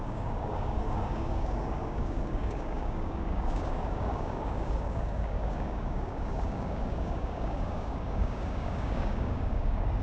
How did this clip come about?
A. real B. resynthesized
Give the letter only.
B